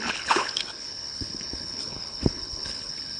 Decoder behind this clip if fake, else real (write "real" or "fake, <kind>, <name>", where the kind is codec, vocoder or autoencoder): fake, codec, HILCodec